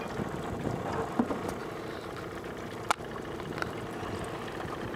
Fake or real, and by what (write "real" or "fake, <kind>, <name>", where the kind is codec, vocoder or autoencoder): real